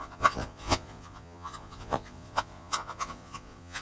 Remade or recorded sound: remade